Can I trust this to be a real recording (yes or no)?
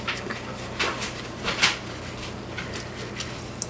yes